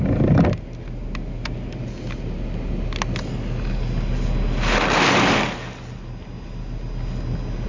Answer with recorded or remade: recorded